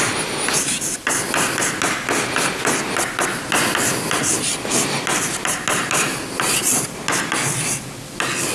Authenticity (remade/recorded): recorded